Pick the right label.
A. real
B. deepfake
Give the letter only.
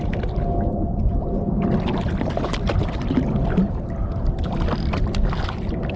A